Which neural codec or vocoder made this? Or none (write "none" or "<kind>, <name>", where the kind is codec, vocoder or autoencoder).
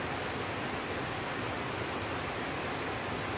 none